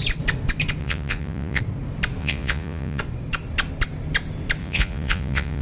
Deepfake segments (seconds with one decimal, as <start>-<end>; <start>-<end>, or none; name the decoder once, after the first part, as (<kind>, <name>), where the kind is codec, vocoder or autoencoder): 0.8-1.6 (vocoder, Vocos); 2.2-3.0; 4.6-5.6